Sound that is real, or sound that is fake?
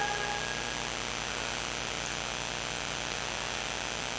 real